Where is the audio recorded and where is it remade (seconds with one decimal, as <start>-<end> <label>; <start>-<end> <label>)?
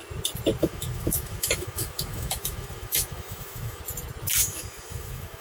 0.0-0.6 recorded; 0.6-3.8 remade; 3.8-4.4 recorded; 4.4-5.4 remade